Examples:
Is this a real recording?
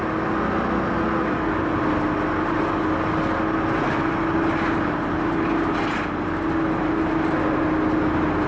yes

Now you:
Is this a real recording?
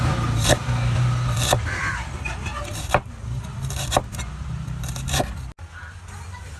yes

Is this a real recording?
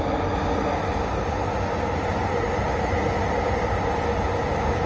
yes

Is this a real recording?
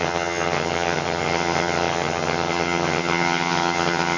no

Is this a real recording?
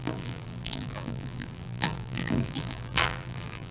no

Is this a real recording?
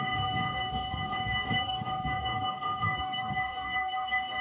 no